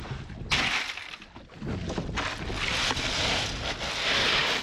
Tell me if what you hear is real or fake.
real